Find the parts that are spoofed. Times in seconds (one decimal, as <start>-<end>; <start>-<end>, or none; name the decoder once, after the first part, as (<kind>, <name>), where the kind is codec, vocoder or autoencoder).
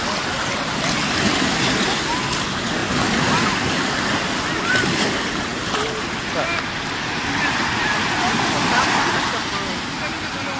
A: none